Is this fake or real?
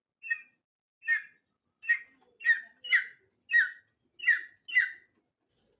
real